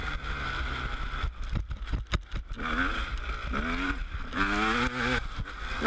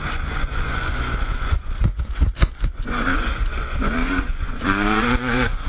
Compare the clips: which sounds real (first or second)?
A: first